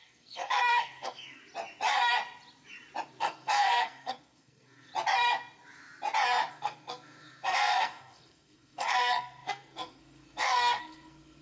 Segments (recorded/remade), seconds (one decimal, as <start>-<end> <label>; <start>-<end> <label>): 0.0-1.4 remade; 1.4-3.2 recorded; 3.2-4.9 remade; 4.9-6.5 recorded; 6.5-11.4 remade

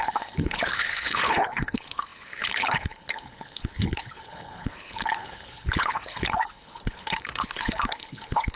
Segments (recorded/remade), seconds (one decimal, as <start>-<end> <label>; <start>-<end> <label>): 0.0-8.6 remade

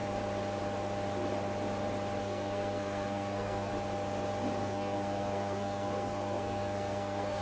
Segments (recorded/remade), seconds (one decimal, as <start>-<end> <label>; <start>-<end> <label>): 0.0-2.2 recorded; 2.2-3.7 remade; 3.7-4.6 recorded; 4.6-7.4 remade